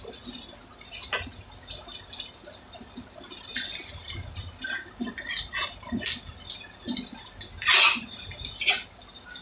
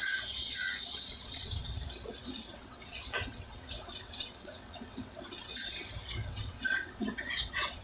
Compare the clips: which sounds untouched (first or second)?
first